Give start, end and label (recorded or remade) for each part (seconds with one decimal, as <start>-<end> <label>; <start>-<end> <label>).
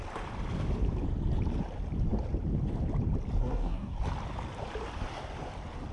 0.0-3.4 recorded; 3.4-4.0 remade; 4.0-5.9 recorded